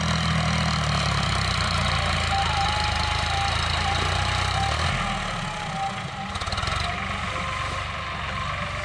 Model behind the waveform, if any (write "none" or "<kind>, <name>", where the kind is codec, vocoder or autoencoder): none